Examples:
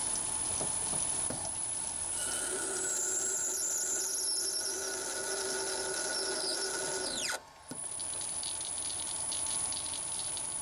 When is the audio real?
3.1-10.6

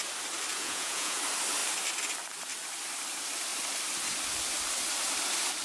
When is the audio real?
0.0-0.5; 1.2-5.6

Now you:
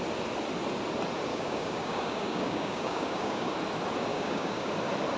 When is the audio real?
0.0-1.3; 3.5-4.1; 4.7-5.2

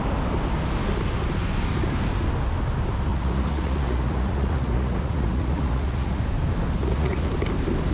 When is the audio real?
0.0-3.1; 6.2-6.8; 7.3-7.9

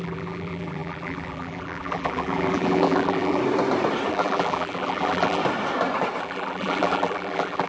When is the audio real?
3.4-4.1; 5.4-6.2